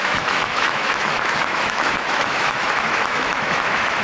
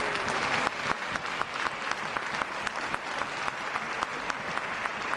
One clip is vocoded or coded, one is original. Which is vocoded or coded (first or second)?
first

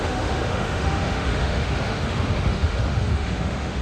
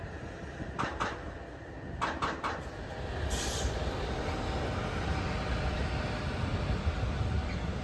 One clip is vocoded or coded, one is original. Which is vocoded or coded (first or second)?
first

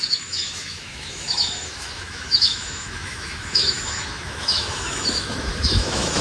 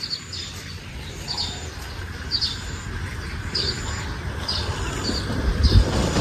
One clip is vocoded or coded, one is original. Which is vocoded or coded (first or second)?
first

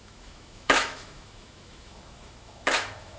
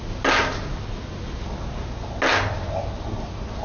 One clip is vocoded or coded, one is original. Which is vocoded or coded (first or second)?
first